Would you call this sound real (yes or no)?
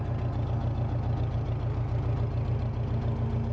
yes